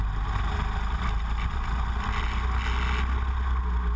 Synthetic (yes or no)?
no